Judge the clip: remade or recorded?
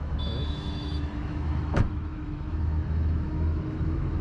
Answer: remade